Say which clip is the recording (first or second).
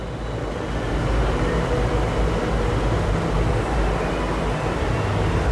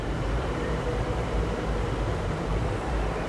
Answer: first